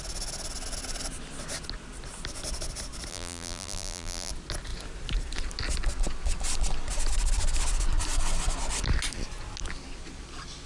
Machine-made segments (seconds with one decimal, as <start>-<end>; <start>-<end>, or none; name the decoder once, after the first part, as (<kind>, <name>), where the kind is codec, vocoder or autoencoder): 3.1-4.3 (vocoder, BigVGAN v2)